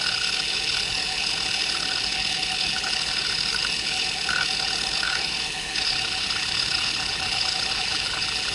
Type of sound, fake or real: fake